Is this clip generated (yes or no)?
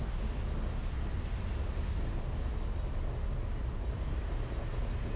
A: no